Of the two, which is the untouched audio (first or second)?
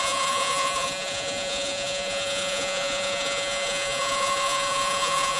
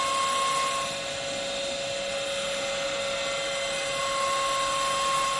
second